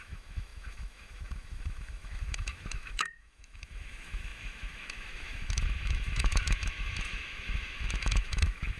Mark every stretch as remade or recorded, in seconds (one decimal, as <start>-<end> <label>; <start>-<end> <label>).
0.0-8.8 remade